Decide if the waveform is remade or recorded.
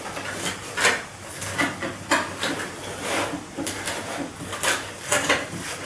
recorded